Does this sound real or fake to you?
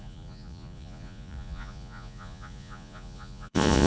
fake